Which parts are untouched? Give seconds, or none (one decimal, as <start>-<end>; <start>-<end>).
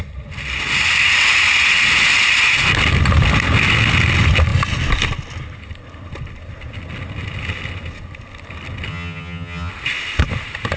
0.0-8.9; 9.7-10.8